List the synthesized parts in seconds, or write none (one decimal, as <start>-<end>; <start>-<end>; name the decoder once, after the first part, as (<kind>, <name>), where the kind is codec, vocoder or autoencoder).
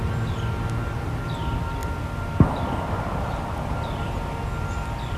1.8-4.1 (vocoder, BigVGAN v2)